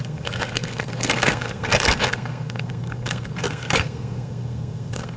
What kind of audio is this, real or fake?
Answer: fake